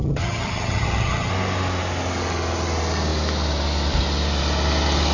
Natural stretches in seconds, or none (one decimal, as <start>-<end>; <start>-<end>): 1.3-5.1